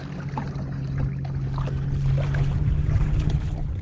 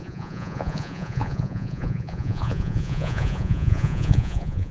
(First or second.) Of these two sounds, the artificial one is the second